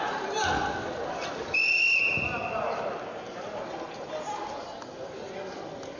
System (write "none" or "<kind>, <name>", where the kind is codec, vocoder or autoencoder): none